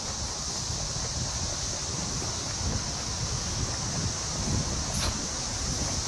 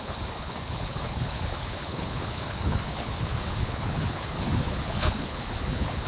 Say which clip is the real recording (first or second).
first